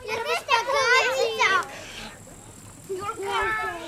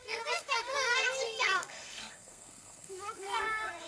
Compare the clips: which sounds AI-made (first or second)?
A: second